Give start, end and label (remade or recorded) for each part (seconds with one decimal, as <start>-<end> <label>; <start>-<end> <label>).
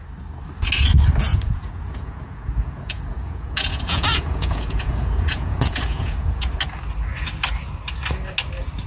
0.0-1.3 recorded; 1.3-6.5 remade; 6.5-8.9 recorded